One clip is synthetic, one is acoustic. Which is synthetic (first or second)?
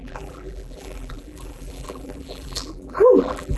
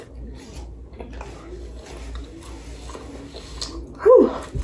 first